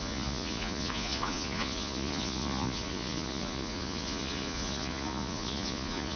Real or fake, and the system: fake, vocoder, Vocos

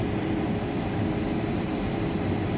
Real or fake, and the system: real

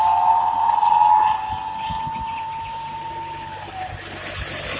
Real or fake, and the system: real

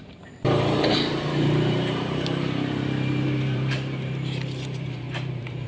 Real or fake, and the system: fake, vocoder, BigVGAN v2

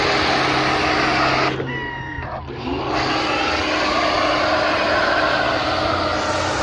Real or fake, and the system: real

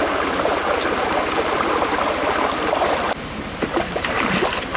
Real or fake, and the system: real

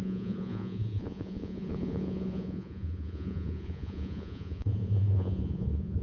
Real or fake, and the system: fake, vocoder, Vocos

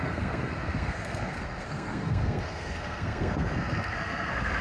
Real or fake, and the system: fake, codec, SNAC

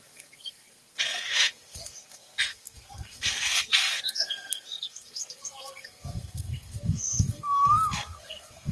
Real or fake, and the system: fake, codec, SNAC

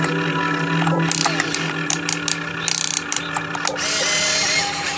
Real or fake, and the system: real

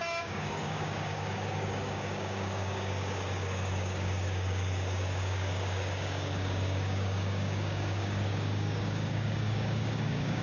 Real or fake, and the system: fake, codec, DAC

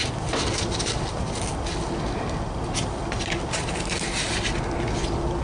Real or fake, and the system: real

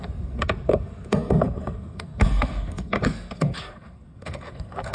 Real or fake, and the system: fake, codec, SNAC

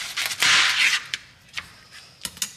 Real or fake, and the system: real